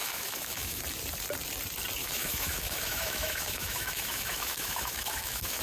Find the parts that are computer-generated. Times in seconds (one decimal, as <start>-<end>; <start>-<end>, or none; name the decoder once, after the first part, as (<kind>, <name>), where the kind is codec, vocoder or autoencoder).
0.0-0.8 (autoencoder, DAC-VAE); 2.0-5.6